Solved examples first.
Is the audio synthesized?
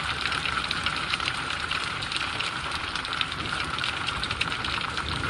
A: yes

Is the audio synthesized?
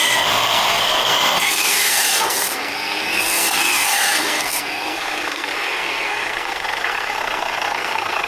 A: yes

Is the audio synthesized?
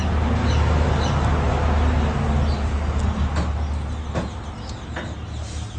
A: no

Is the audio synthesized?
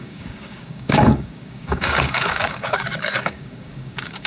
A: yes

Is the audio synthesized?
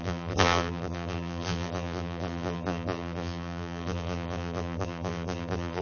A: yes